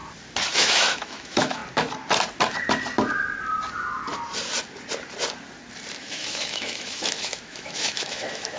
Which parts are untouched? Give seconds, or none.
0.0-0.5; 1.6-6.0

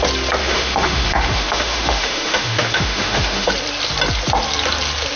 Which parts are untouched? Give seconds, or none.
0.0-0.4; 3.5-5.2

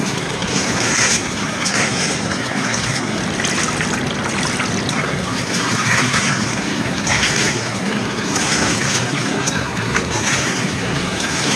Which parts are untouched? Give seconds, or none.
3.2-4.9

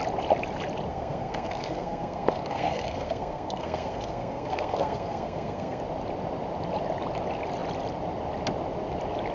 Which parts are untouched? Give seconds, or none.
0.0-0.9; 5.8-9.3